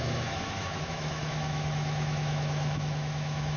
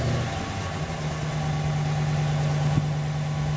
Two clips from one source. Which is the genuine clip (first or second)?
second